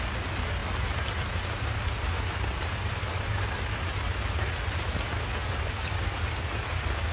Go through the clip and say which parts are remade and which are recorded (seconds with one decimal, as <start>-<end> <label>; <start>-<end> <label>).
0.0-7.1 recorded